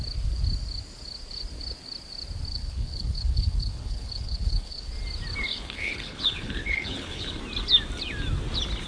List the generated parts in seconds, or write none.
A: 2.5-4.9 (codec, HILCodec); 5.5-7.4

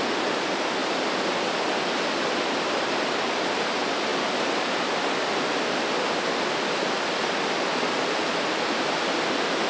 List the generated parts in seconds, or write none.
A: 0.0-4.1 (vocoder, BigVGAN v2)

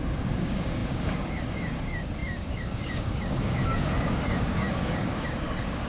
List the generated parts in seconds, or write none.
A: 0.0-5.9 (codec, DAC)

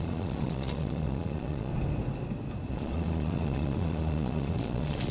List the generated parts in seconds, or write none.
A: 0.0-1.7 (vocoder, Vocos); 2.7-5.1

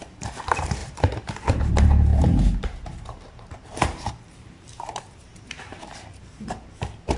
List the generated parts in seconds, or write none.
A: 0.0-0.8 (vocoder, BigVGAN v2); 1.6-7.2

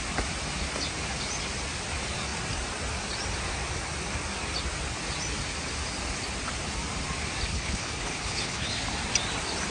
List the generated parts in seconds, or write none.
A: 7.5-8.7 (codec, HILCodec)

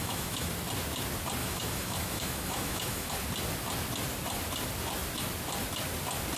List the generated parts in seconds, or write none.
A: 0.0-0.5 (autoencoder, DAC-VAE); 1.4-3.1